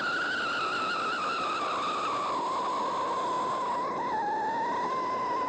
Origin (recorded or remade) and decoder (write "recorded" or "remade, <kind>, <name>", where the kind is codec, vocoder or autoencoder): remade, vocoder, BigVGAN v2